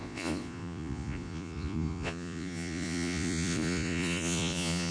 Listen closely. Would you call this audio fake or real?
fake